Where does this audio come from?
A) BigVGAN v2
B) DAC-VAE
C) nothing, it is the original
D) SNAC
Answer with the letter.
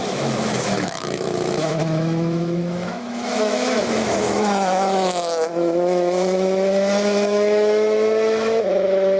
B